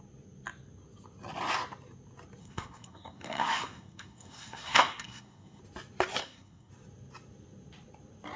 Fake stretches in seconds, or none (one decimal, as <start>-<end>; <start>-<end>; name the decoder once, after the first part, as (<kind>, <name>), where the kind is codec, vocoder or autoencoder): 2.4-5.6 (codec, SNAC); 6.2-6.7